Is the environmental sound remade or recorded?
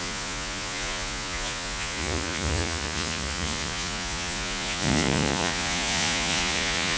remade